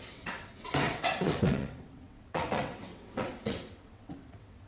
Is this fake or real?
fake